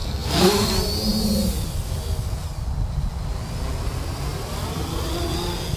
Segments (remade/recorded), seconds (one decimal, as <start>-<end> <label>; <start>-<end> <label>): 0.0-0.7 remade; 0.7-5.8 recorded